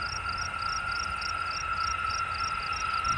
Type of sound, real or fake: real